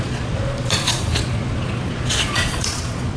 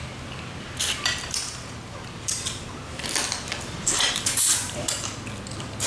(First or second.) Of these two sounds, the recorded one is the second